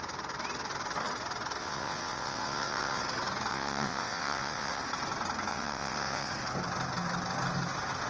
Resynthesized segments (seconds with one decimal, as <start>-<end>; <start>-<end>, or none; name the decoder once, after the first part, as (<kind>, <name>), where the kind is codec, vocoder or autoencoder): 1.6-3.0 (vocoder, WaveNeXt); 3.5-4.8; 5.5-6.3